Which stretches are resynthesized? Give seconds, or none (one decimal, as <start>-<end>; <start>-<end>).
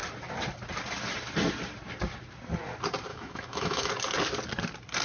3.1-3.9